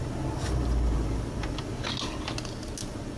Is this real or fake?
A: real